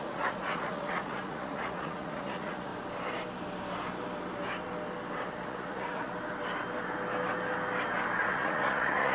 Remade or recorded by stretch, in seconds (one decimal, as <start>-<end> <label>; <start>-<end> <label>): 0.0-2.7 remade; 2.7-5.3 recorded; 5.3-6.1 remade; 6.1-8.2 recorded; 8.2-9.1 remade